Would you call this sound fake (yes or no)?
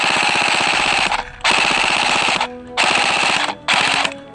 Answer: no